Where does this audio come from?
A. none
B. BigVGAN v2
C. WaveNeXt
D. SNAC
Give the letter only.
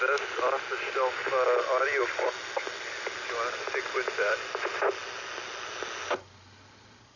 A